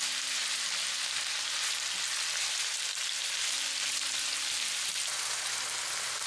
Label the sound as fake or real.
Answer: real